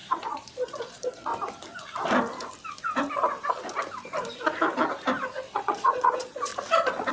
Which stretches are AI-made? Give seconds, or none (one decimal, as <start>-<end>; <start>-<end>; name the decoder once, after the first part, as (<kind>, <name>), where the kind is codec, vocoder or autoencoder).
0.0-1.3 (vocoder, Vocos); 5.5-6.5